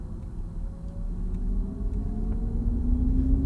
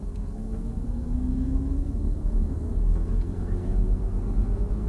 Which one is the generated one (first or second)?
second